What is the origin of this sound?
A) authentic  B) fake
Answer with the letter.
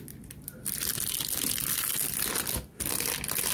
A